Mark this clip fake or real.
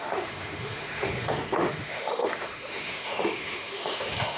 fake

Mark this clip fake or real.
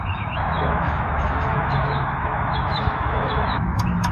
fake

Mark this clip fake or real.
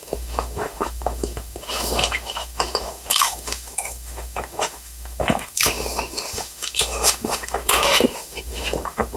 fake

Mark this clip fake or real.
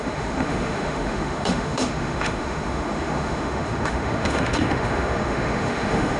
fake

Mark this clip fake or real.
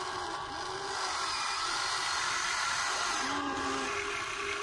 real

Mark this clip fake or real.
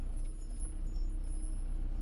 real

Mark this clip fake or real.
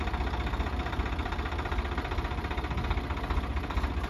real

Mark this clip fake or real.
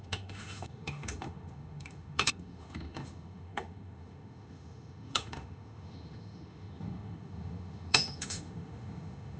fake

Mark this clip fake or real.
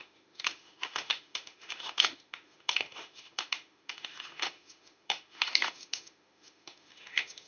fake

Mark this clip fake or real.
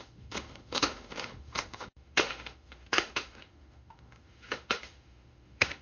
fake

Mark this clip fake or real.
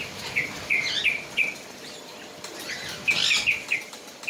real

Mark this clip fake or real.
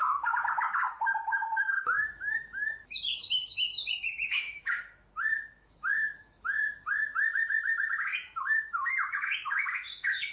fake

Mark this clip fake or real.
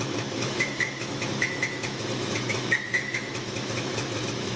fake